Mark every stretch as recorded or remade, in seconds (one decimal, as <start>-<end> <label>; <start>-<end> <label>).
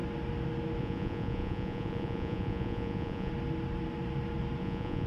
0.0-0.8 recorded; 0.8-3.3 remade; 3.3-4.6 recorded; 4.6-5.1 remade